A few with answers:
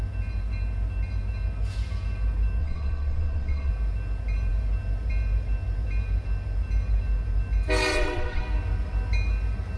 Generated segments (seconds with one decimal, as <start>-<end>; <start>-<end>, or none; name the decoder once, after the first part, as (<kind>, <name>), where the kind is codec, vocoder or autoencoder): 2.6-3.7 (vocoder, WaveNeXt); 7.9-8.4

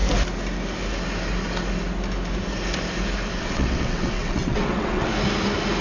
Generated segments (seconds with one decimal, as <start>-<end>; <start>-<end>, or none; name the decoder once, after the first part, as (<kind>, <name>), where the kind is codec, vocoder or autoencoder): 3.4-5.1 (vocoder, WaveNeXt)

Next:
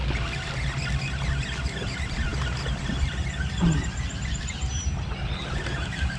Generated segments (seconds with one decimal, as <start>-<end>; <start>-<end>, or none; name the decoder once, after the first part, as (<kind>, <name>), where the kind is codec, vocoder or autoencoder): none

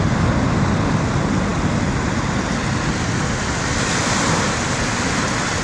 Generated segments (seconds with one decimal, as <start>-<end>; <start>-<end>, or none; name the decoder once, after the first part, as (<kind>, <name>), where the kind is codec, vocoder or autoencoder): none

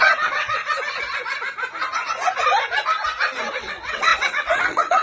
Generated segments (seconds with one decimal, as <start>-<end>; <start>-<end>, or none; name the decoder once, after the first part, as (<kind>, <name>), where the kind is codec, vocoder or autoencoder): 0.0-0.6 (vocoder, WaveNeXt); 3.6-5.0

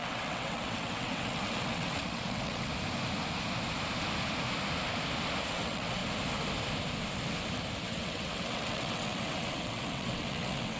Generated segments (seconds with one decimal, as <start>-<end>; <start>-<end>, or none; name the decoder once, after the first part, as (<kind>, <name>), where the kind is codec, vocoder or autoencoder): 0.0-2.7 (vocoder, WaveNeXt); 5.5-6.0; 7.8-10.8